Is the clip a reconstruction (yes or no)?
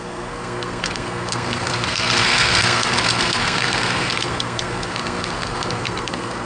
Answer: yes